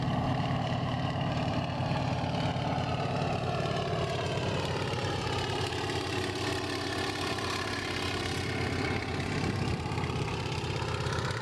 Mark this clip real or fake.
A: fake